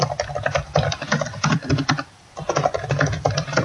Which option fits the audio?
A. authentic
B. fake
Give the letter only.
B